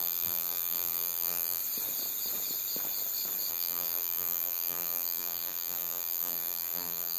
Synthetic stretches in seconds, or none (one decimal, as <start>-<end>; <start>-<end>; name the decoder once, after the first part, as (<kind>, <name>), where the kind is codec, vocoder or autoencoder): 0.0-1.6 (vocoder, BigVGAN v2); 3.5-7.2